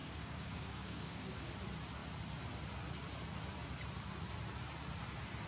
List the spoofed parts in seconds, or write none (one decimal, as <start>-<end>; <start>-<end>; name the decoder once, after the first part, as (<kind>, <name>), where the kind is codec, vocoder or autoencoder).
0.0-1.5 (codec, DAC)

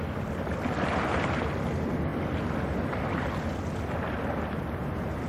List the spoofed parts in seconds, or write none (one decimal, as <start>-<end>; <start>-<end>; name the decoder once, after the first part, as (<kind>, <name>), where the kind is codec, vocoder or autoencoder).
2.1-3.3 (vocoder, BigVGAN v2)